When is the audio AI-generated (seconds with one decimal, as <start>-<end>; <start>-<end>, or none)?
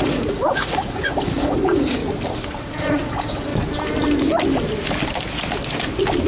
0.0-2.0; 2.6-3.5